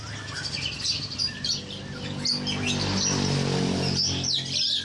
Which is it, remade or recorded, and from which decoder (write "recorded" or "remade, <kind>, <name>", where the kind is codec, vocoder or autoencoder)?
recorded